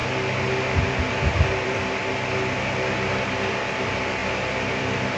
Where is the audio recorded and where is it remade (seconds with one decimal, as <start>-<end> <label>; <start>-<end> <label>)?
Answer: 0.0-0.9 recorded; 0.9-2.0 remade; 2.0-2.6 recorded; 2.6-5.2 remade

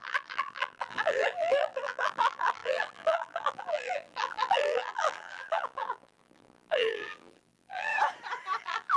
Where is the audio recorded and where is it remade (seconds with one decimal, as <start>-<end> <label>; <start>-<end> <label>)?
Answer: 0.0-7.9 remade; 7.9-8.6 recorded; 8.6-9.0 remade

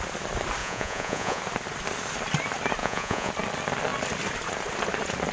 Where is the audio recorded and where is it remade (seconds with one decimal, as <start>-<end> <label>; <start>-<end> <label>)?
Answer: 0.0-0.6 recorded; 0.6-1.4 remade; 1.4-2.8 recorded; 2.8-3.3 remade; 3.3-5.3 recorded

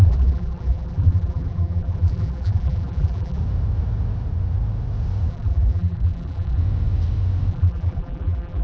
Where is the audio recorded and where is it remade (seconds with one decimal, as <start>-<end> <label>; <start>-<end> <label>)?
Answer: 0.0-3.4 remade; 3.4-5.3 recorded; 5.3-6.6 remade; 6.6-7.5 recorded; 7.5-8.6 remade

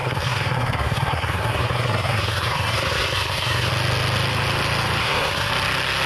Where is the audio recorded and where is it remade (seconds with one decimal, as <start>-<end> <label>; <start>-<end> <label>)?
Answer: 0.0-3.7 remade; 3.7-5.0 recorded; 5.0-5.5 remade; 5.5-6.1 recorded